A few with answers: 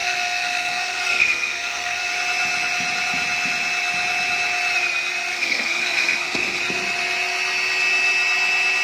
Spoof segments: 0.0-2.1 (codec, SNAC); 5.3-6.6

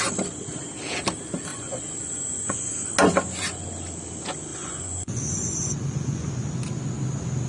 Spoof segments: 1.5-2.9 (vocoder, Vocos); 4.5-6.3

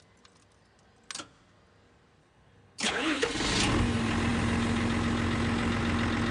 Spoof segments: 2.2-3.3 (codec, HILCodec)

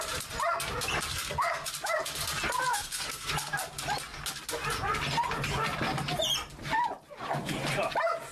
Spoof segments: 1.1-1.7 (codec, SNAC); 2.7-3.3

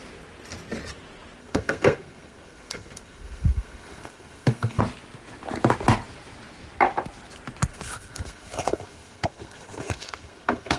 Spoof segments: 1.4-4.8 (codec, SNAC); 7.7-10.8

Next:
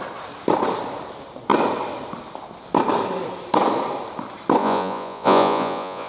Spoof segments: 4.6-6.1 (vocoder, Vocos)

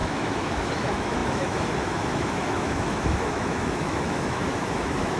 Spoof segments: 0.0-5.2 (autoencoder, DAC-VAE)